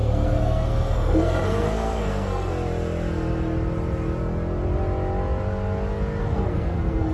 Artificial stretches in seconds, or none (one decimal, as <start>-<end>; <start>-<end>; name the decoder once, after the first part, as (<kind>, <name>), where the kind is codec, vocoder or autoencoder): 0.0-2.5 (codec, SNAC); 6.2-7.1